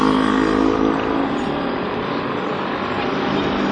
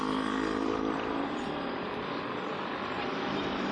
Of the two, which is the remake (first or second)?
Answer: second